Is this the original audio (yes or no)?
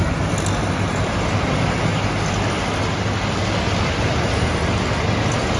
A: yes